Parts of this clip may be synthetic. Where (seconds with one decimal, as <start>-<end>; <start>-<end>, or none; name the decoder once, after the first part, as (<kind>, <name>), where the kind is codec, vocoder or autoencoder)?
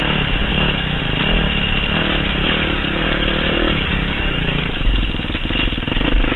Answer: 0.5-1.0 (codec, DAC); 2.4-5.1